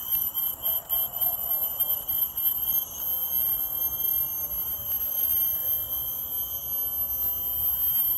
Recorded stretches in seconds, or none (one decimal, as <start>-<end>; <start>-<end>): 0.0-8.2